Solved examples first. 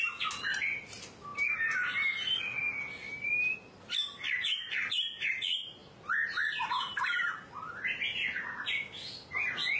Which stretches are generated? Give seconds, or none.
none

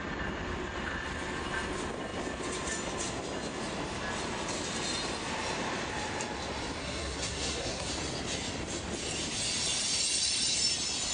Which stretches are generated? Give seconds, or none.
6.8-7.9 (codec, SNAC)

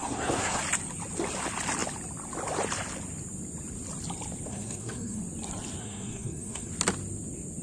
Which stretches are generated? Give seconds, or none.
0.0-0.6 (codec, SNAC); 4.5-5.2; 5.8-6.7

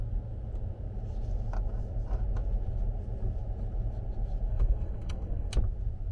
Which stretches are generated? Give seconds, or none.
4.5-5.5 (codec, SNAC)

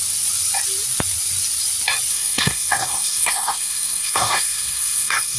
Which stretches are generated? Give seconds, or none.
2.1-5.4 (codec, SNAC)